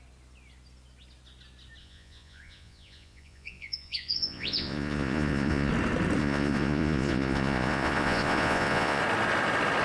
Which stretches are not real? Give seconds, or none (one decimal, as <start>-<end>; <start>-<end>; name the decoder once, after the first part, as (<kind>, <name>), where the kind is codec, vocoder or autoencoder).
1.8-5.7 (vocoder, Vocos); 6.2-9.0